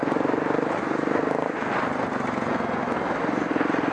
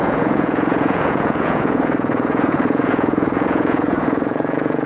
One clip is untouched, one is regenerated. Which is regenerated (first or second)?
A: second